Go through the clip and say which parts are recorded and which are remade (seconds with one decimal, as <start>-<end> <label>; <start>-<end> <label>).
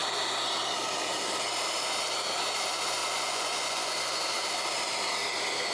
0.0-3.0 recorded; 3.0-4.2 remade; 4.2-5.7 recorded